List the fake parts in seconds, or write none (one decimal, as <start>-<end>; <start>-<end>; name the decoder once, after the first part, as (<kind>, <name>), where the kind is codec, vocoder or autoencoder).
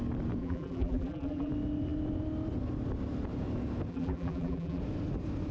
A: 0.4-1.5 (vocoder, BigVGAN v2); 3.9-4.8